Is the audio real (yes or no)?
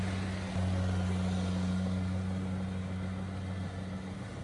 yes